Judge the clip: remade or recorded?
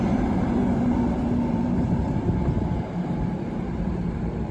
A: remade